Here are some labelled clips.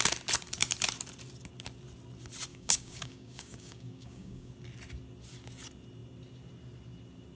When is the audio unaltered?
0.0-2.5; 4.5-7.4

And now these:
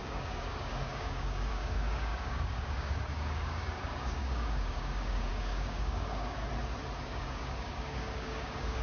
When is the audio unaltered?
6.4-7.0

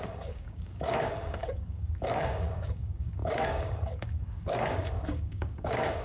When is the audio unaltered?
none

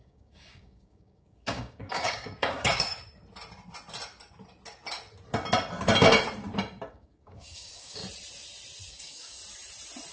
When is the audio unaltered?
2.9-6.9; 8.0-8.9; 9.4-10.1

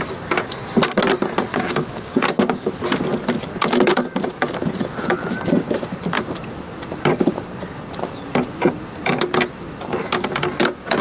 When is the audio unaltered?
0.0-1.5; 2.7-11.0